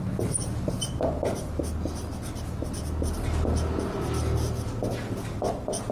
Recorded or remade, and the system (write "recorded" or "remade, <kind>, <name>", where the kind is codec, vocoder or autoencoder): recorded